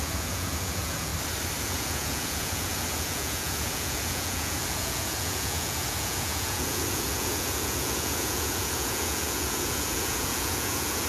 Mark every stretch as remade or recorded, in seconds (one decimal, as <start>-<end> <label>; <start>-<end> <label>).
0.0-1.1 remade; 1.1-1.6 recorded; 1.6-11.1 remade